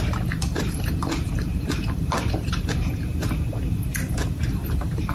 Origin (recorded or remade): remade